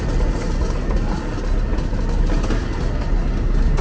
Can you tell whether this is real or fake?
real